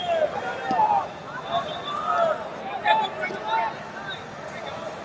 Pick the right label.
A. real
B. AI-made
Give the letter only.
A